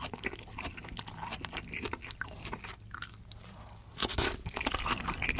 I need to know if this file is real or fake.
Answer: real